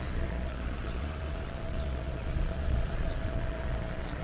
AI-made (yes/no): yes